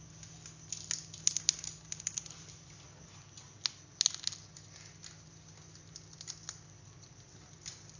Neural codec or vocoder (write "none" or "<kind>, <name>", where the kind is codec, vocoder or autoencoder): none